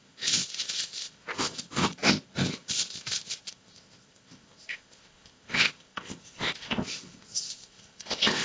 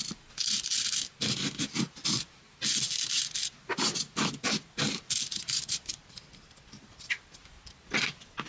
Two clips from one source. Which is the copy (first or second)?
first